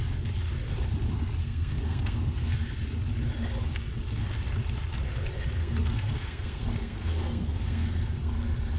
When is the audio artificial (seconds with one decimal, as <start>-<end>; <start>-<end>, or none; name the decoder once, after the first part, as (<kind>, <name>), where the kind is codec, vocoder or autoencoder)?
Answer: 1.4-2.5 (codec, SNAC); 5.6-8.3